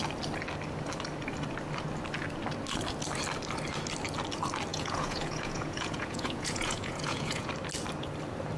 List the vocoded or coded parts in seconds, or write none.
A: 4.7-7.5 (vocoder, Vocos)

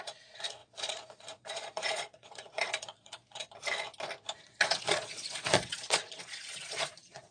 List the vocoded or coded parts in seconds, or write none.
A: 0.0-3.4 (vocoder, Vocos); 4.4-7.3

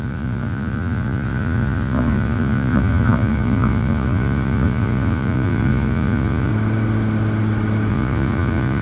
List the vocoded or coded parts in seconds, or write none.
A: 0.0-6.5 (vocoder, Vocos); 7.9-8.8

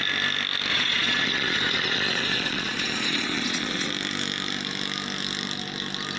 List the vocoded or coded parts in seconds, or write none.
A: 0.7-3.9 (vocoder, Vocos)

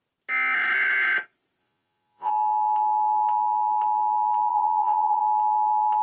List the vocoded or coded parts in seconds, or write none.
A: 1.6-2.3 (vocoder, Vocos); 4.5-5.2

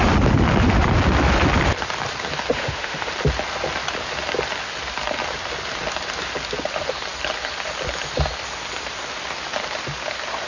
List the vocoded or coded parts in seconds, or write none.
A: 2.5-3.1 (autoencoder, DAC-VAE)